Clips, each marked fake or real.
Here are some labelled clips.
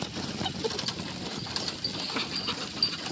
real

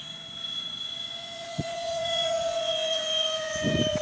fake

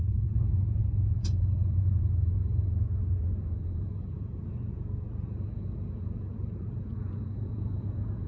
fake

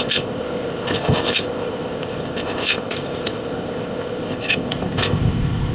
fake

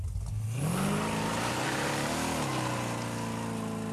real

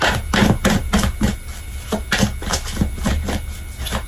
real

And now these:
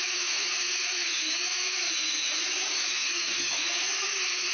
fake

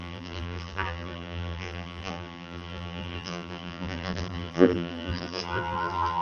fake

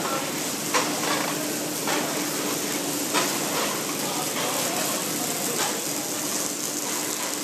real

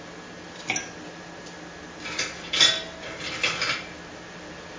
real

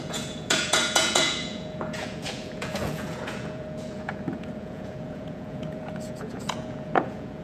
fake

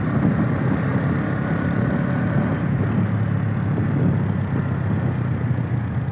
real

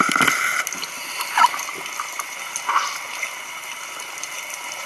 fake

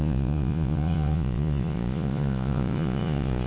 fake